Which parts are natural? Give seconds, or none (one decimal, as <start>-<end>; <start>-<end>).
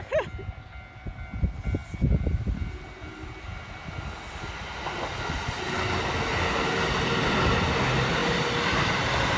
0.0-9.4